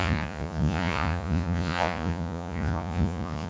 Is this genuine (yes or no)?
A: no